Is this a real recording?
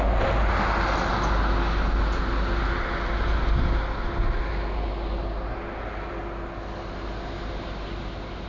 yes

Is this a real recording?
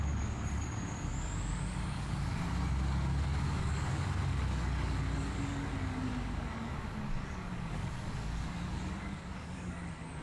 no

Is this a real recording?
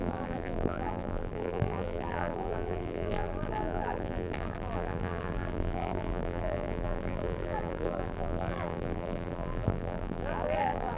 no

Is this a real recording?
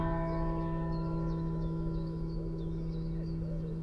no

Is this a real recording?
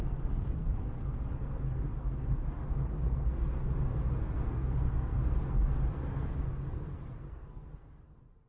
no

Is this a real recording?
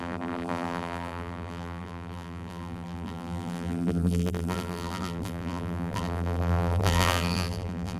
no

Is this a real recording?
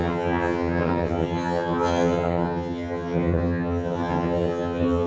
no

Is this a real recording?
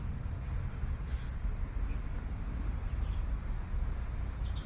yes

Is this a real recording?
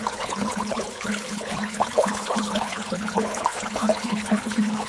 no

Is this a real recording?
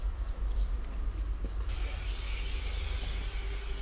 yes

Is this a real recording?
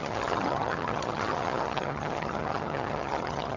no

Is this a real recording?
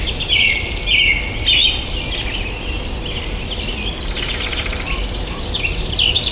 yes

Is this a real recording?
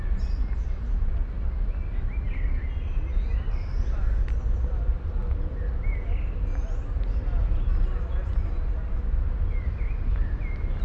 yes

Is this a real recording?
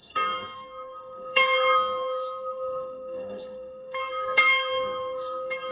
no